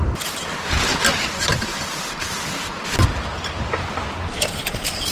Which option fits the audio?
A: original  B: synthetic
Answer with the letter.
A